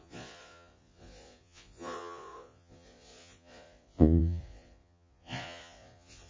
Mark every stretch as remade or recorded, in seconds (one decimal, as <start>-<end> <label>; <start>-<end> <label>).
0.0-6.3 remade